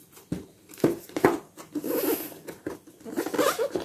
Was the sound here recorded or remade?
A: recorded